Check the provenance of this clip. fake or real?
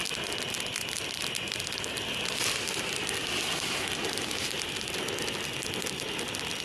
real